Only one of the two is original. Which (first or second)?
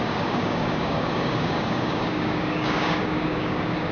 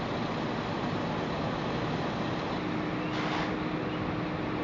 second